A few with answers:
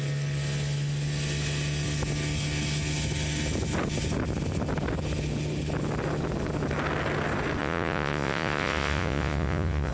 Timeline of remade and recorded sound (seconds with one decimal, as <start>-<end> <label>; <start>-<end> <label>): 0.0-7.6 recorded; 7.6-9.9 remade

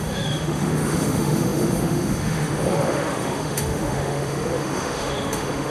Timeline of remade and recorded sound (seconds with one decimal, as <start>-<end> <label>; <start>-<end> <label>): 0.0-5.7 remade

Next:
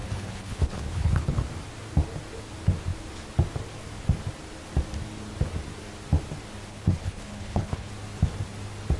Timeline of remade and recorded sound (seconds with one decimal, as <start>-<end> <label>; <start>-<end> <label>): 0.0-1.4 remade; 1.4-6.7 recorded; 6.7-7.9 remade; 7.9-9.0 recorded